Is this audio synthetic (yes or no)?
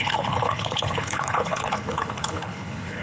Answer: yes